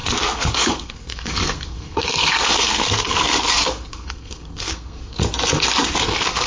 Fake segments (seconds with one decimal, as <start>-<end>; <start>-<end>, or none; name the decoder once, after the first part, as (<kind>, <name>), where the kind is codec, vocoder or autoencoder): 0.0-5.2 (codec, SNAC); 6.0-6.5